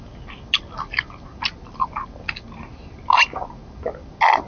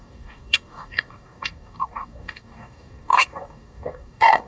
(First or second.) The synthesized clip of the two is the second